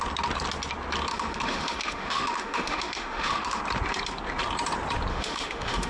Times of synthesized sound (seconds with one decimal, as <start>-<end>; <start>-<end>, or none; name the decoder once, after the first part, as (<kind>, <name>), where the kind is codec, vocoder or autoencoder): 1.1-3.6 (autoencoder, DAC-VAE); 5.1-5.9